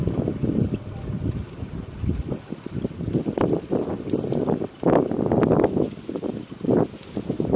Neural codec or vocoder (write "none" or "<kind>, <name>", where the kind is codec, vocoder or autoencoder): none